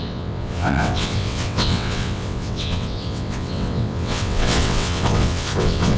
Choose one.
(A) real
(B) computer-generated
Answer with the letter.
B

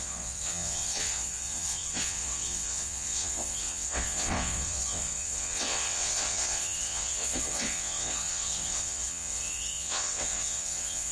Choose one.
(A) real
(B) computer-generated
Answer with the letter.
B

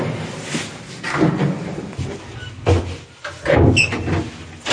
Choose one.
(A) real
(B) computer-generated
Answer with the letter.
A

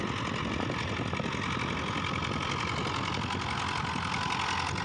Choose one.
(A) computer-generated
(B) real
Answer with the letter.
B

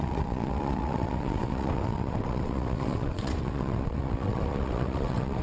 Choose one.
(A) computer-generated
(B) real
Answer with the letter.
A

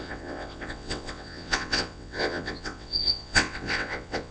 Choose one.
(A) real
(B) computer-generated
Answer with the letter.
B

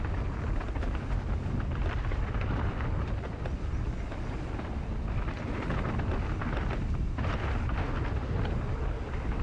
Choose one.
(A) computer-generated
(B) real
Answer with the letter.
B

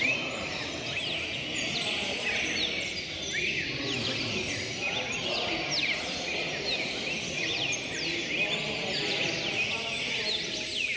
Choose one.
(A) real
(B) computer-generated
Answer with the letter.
A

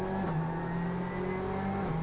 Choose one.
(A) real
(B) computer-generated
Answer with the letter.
A